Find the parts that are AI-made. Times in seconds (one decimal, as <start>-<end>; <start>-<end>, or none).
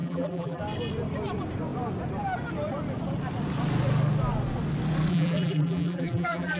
0.0-0.6; 5.1-6.6